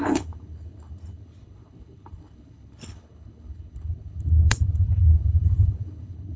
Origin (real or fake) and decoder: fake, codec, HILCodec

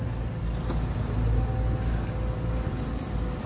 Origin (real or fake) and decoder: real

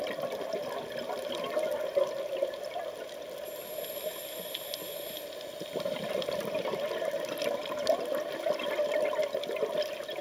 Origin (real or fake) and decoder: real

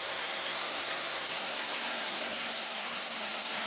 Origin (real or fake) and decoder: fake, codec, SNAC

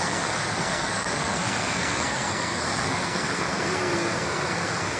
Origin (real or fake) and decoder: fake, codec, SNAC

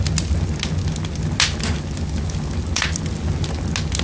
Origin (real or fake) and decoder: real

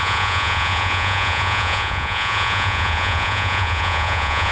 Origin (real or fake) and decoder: fake, vocoder, Vocos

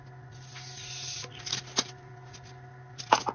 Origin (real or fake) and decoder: real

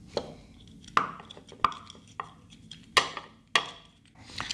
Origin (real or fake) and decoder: real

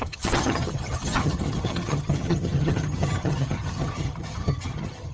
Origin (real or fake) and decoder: fake, vocoder, HiFi-GAN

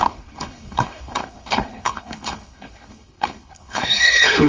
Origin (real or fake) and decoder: fake, codec, HILCodec